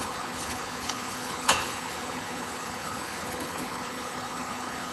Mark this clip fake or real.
fake